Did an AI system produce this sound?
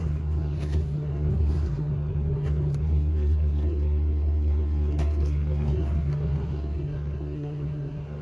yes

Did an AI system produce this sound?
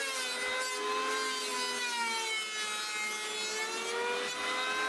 no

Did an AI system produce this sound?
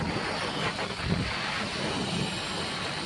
no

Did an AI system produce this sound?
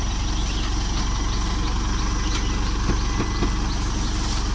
no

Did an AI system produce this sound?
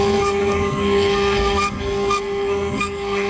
yes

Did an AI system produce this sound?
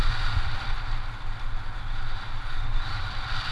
no